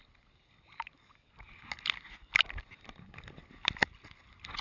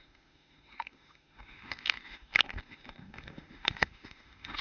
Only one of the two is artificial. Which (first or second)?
second